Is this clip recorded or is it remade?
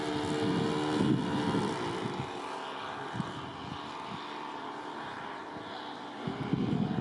recorded